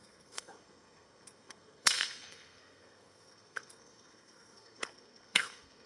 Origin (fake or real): fake